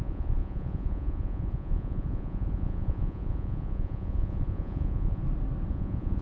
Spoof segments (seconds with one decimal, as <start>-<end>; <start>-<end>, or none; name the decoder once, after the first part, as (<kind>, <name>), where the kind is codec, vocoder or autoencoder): 0.0-5.2 (vocoder, Vocos); 5.7-6.2